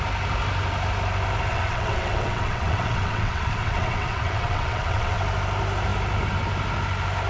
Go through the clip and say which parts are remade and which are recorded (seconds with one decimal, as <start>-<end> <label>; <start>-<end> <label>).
0.0-1.5 recorded; 1.5-5.2 remade; 5.2-7.3 recorded